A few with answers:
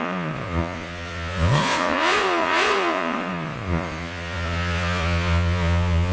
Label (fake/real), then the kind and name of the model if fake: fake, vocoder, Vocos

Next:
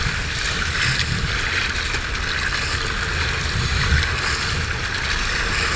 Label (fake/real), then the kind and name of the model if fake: real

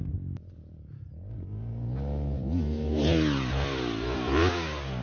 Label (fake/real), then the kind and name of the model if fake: real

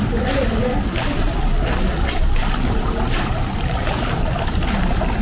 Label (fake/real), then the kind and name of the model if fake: real